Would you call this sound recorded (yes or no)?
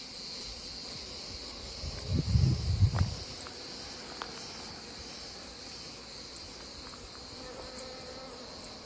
yes